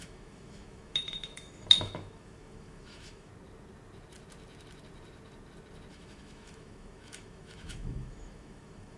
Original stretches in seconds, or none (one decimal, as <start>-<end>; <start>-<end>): 3.3-5.9